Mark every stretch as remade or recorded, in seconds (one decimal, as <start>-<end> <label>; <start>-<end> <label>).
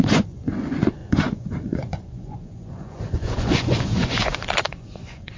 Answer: 0.0-5.4 remade